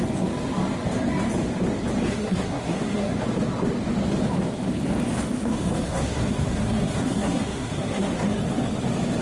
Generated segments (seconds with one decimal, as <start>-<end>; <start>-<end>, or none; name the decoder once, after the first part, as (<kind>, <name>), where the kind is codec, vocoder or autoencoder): 2.1-3.2 (codec, SNAC); 5.4-8.4